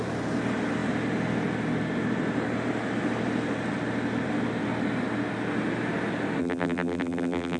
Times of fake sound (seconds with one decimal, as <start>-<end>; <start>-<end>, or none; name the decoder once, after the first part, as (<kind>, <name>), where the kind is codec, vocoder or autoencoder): 6.4-7.6 (vocoder, BigVGAN v2)